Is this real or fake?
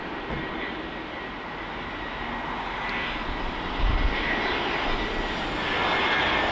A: real